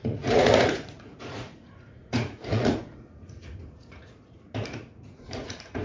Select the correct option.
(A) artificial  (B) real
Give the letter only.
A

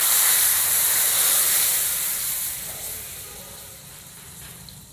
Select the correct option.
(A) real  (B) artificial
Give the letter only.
B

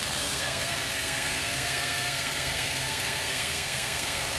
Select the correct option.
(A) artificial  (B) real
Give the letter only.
A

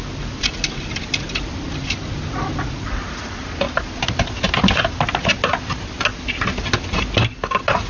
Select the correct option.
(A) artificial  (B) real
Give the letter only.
B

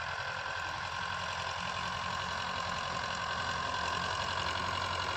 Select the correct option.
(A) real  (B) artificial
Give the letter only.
A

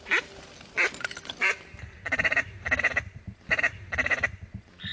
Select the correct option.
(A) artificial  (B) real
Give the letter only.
A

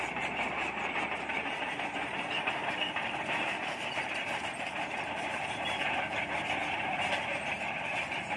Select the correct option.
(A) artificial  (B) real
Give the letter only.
A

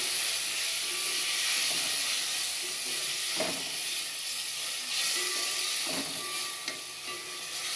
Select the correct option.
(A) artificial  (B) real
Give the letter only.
B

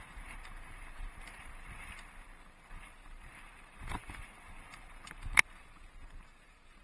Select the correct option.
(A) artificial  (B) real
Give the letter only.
A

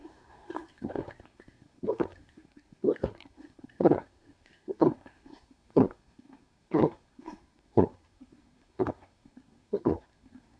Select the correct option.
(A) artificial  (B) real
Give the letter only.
A